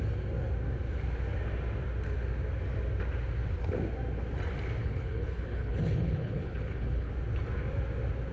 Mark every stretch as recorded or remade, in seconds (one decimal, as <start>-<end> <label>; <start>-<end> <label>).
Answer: 0.0-4.8 recorded; 4.8-7.1 remade; 7.1-8.3 recorded